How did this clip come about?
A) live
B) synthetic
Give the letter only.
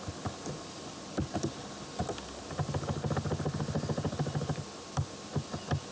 A